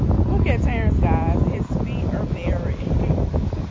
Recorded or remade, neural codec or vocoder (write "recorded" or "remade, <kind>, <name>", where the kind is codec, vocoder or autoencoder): recorded